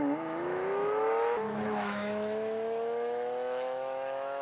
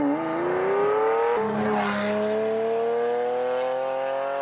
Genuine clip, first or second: second